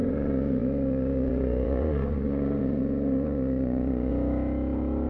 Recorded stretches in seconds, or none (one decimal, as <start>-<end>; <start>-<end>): 4.1-5.1